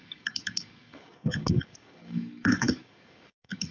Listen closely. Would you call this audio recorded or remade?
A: remade